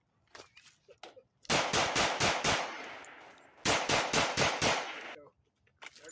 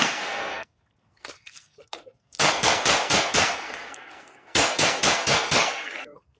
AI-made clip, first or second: second